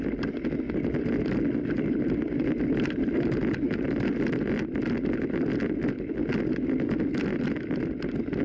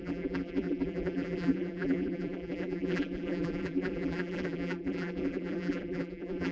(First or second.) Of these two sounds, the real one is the first